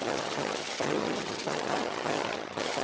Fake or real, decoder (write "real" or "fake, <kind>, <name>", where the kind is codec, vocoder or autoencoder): fake, vocoder, HiFi-GAN